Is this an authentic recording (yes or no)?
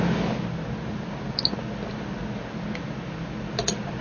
yes